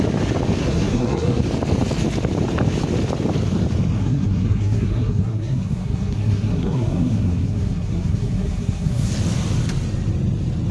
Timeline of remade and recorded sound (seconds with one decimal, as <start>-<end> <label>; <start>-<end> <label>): 0.0-0.6 recorded; 0.6-1.4 remade; 1.4-4.0 recorded; 4.0-9.1 remade; 9.1-10.7 recorded